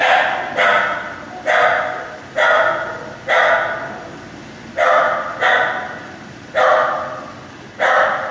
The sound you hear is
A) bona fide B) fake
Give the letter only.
A